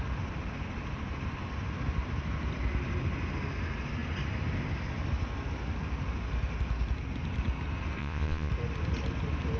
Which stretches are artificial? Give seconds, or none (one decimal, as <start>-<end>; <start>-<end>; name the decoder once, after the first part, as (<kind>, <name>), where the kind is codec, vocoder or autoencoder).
8.0-8.5 (vocoder, Vocos)